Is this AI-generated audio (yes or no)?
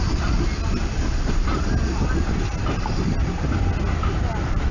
no